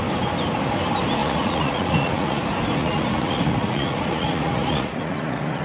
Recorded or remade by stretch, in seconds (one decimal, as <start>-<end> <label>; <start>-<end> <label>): 0.0-1.2 recorded; 1.2-2.4 remade; 2.4-2.8 recorded; 2.8-5.6 remade